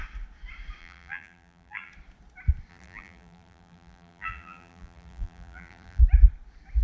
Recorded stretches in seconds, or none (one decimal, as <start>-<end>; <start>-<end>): 0.0-0.8; 1.9-2.7; 6.0-6.8